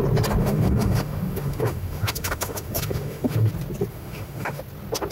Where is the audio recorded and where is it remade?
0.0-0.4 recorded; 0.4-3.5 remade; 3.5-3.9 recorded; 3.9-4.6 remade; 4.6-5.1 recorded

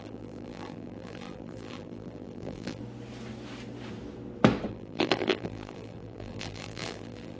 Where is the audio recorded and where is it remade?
0.0-2.8 remade; 2.8-4.7 recorded; 4.7-7.4 remade

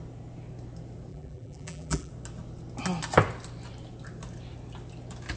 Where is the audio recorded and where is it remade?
0.0-1.1 recorded; 1.1-2.1 remade; 2.1-5.4 recorded

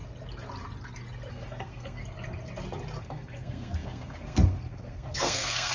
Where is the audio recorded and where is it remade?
0.0-1.3 recorded; 1.3-2.0 remade; 2.0-3.0 recorded; 3.0-5.7 remade